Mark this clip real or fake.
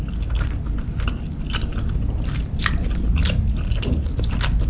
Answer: real